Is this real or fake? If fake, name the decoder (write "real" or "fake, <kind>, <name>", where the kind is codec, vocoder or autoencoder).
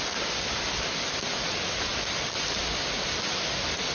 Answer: real